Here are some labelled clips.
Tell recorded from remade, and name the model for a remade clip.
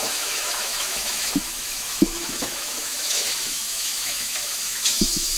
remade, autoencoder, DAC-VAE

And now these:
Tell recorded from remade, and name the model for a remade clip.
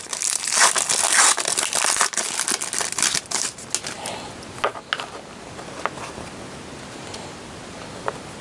recorded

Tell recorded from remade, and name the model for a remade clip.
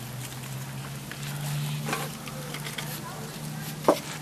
recorded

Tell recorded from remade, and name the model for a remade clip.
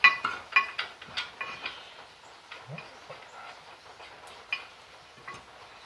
recorded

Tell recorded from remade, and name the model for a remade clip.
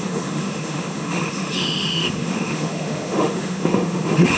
remade, autoencoder, DAC-VAE